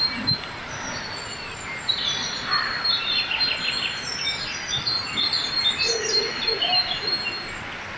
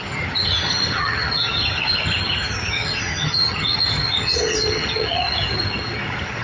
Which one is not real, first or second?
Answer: second